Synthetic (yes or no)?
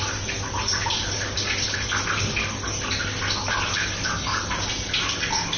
no